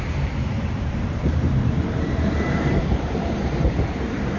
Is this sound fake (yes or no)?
yes